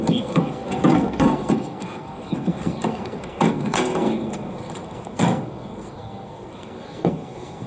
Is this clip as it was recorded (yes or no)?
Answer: no